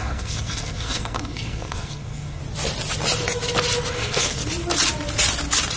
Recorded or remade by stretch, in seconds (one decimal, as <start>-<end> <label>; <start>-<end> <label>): 0.0-2.4 remade; 2.4-3.9 recorded; 3.9-4.4 remade; 4.4-5.8 recorded